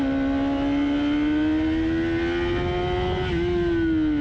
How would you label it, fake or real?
real